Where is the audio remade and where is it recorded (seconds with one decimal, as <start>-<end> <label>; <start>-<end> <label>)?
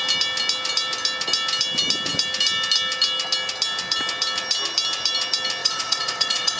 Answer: 0.0-5.6 recorded; 5.6-6.6 remade